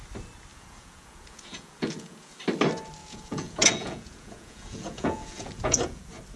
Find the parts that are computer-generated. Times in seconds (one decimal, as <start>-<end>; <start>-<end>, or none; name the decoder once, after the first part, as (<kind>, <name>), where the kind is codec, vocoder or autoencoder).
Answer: 0.5-2.4 (vocoder, Vocos); 3.0-6.0